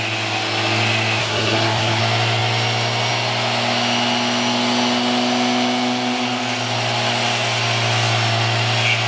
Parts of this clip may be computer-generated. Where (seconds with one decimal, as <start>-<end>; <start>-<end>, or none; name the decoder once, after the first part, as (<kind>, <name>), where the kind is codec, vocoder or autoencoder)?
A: 1.2-2.0 (codec, SNAC)